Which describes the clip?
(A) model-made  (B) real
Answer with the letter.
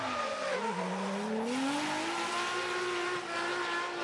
B